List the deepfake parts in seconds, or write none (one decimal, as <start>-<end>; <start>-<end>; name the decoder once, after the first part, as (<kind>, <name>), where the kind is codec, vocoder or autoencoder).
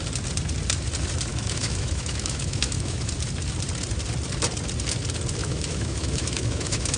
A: 1.3-3.1 (autoencoder, DAC-VAE); 5.4-7.0